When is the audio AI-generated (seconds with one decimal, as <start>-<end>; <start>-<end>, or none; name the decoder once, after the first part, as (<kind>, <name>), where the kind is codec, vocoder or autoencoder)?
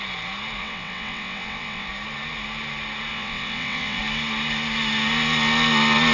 0.6-1.9 (vocoder, WaveNeXt); 3.1-4.0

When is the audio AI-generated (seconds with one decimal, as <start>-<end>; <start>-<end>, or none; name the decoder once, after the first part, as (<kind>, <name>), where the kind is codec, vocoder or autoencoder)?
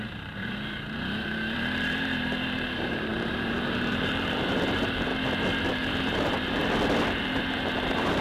0.0-5.1 (vocoder, BigVGAN v2); 5.7-6.6; 7.2-8.2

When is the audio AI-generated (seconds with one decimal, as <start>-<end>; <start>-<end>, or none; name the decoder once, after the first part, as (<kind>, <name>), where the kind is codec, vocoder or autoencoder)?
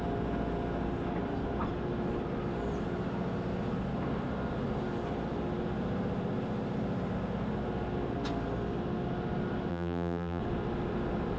9.7-10.4 (vocoder, BigVGAN v2)